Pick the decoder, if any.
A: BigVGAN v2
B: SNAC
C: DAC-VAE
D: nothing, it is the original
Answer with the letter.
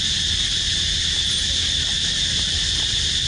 D